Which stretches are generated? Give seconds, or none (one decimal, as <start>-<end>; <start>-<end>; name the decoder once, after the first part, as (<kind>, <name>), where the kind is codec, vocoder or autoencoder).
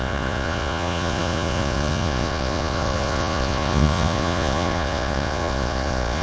0.0-6.2 (vocoder, Vocos)